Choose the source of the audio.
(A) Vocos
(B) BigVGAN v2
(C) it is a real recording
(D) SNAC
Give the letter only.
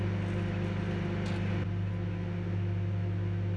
C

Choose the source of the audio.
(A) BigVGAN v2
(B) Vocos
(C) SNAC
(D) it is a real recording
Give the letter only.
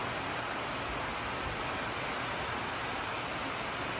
D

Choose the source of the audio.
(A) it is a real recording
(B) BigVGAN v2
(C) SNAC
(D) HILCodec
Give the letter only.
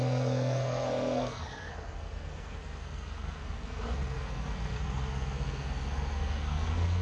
C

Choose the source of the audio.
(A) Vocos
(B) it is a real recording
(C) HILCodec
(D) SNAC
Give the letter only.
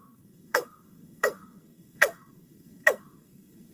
D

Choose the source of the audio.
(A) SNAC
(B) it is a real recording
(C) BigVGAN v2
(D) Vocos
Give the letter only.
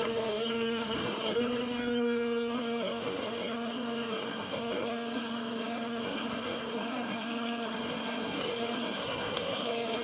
A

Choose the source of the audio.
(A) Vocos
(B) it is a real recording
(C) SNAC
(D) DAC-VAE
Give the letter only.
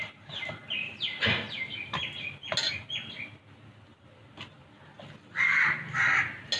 B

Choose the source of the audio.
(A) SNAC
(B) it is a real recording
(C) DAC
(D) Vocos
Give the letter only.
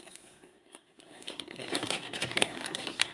A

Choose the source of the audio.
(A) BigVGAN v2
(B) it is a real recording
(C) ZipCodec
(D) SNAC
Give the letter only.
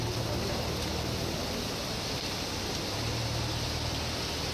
B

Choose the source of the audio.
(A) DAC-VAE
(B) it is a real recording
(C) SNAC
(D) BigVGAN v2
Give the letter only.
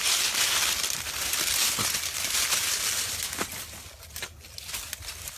B